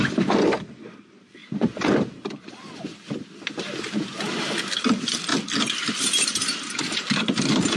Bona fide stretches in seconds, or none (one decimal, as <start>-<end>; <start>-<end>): 0.0-1.4; 3.0-5.3